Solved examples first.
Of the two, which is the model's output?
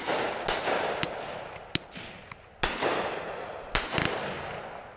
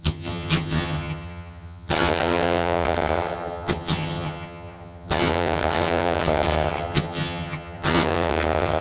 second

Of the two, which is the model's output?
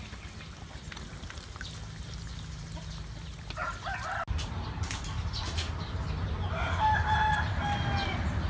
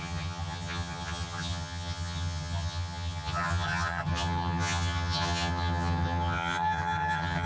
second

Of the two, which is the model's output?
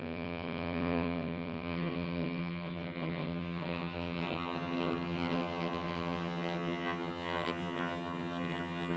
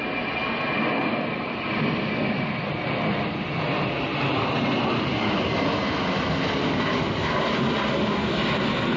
first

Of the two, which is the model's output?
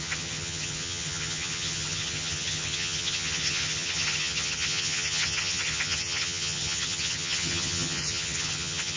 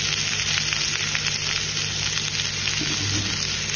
first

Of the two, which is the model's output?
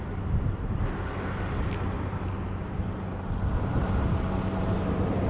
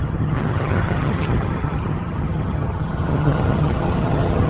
second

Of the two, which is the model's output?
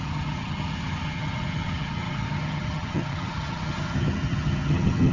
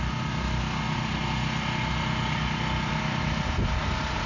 first